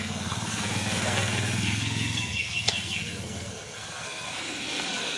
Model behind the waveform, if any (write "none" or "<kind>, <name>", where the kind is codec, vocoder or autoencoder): codec, SNAC